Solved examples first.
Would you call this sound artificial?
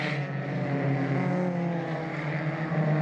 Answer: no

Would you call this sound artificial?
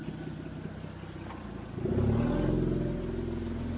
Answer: no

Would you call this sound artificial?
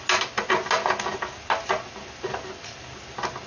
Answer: no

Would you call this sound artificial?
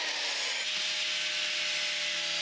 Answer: no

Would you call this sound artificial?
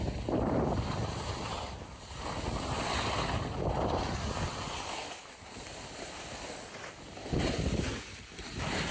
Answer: no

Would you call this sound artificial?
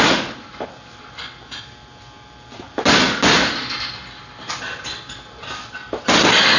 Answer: no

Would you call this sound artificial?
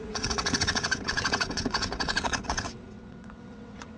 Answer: yes